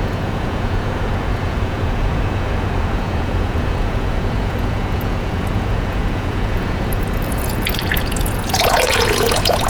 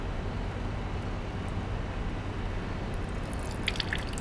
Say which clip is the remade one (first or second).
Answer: first